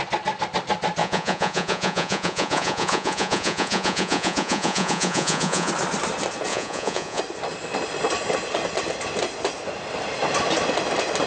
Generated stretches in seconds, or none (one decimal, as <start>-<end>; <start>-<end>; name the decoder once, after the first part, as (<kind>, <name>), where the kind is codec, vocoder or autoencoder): 1.0-5.7 (vocoder, Vocos); 6.5-7.2